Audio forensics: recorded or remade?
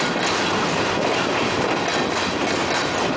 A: recorded